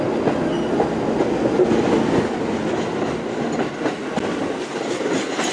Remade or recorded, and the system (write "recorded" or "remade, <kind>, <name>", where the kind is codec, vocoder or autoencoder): recorded